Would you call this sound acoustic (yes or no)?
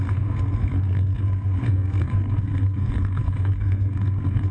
no